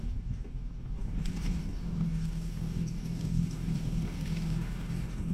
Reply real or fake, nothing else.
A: fake